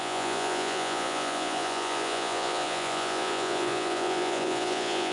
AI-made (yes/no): yes